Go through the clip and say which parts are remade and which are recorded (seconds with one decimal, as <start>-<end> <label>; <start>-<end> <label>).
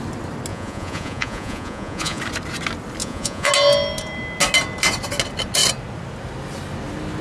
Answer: 0.0-0.5 recorded; 0.5-2.2 remade; 2.2-3.0 recorded; 3.0-3.5 remade; 3.5-7.2 recorded